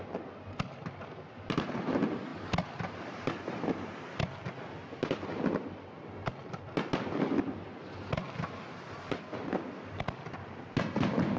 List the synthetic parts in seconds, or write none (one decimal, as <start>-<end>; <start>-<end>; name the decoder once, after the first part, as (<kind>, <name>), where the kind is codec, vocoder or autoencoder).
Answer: none

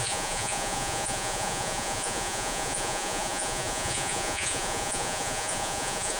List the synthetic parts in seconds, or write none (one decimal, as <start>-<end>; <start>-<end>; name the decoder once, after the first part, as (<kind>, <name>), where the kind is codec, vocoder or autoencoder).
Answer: 0.0-6.2 (vocoder, Vocos)

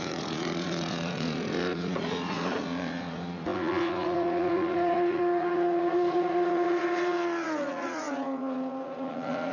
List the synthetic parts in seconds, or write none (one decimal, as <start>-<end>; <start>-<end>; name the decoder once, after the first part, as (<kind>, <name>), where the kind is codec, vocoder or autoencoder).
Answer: 0.0-9.5 (vocoder, Vocos)

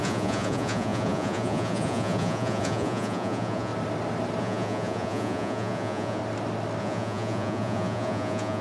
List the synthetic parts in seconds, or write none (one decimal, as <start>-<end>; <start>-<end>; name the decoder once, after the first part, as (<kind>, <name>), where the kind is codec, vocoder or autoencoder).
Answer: 0.0-3.7 (vocoder, Vocos); 4.4-6.2; 6.8-8.6

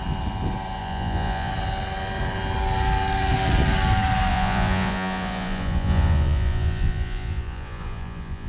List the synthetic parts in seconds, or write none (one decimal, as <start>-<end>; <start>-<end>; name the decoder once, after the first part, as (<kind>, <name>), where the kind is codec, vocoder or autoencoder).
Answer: 0.8-1.5 (vocoder, Vocos); 4.3-8.5

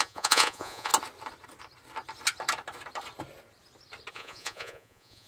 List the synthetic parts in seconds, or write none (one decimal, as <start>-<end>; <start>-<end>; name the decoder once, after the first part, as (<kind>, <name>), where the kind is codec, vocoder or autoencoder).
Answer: 0.0-0.9 (vocoder, Vocos); 4.1-5.3

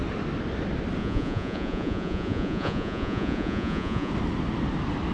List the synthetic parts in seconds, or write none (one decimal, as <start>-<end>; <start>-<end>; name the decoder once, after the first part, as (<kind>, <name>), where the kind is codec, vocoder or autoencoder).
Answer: 1.0-4.1 (vocoder, Vocos)